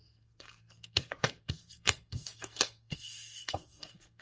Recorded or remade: remade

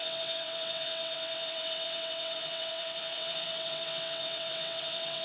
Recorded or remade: remade